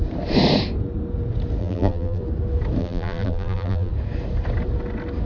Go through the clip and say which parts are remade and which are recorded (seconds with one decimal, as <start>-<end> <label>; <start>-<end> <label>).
0.0-1.6 recorded; 1.6-2.2 remade; 2.2-2.8 recorded; 2.8-3.9 remade; 3.9-5.3 recorded